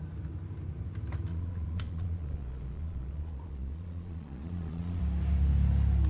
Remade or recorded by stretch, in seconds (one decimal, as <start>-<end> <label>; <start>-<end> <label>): 0.0-1.3 recorded; 1.3-5.0 remade; 5.0-6.1 recorded